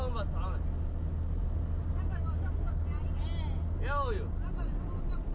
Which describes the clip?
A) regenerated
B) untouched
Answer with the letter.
B